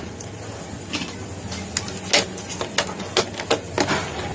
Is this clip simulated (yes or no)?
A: no